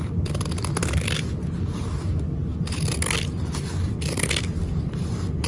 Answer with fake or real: real